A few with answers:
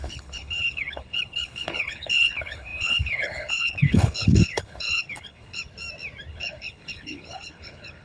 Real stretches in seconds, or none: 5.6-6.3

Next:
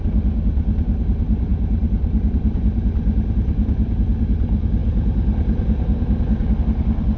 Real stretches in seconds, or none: 0.0-1.5; 4.1-7.2

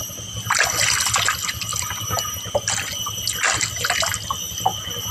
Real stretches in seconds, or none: 0.0-5.1